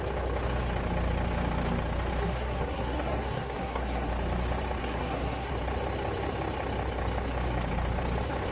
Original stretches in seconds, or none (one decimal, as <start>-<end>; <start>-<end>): 0.0-2.2; 4.1-4.8; 5.5-8.5